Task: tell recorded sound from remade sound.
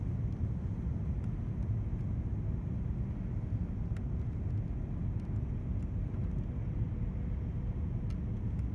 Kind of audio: recorded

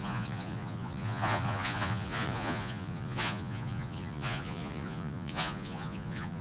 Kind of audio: remade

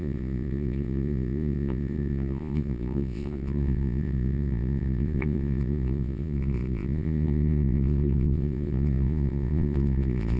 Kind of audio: remade